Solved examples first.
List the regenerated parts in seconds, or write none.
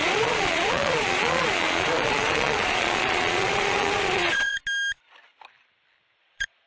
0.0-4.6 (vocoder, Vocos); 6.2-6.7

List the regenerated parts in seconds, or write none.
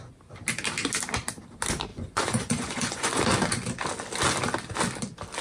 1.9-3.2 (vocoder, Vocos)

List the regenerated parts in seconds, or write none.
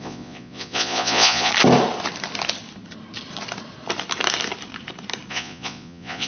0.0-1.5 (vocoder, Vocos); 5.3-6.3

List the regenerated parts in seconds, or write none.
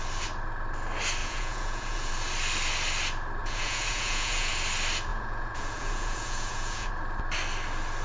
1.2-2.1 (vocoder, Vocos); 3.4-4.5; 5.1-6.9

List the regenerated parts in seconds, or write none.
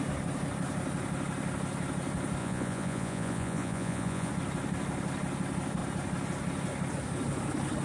2.4-4.3 (vocoder, Vocos)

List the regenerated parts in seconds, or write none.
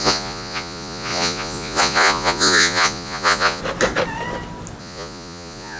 0.0-3.6 (vocoder, Vocos); 4.8-5.8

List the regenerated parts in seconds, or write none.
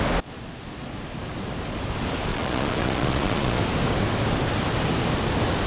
2.3-3.6 (vocoder, Vocos)